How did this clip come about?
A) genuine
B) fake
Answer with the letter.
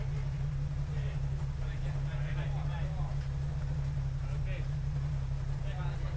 A